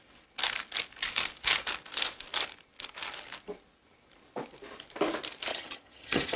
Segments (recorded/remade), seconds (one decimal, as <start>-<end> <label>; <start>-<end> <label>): 0.0-5.5 recorded; 5.5-6.4 remade